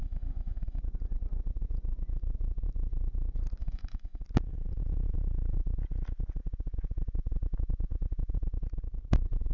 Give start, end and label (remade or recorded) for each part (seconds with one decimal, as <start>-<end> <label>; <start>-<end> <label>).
0.0-0.8 remade; 0.8-3.6 recorded; 3.6-4.2 remade; 4.2-9.5 recorded